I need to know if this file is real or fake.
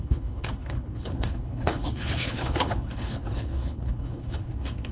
fake